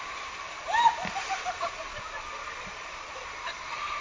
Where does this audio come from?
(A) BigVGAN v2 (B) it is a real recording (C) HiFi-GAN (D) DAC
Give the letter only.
A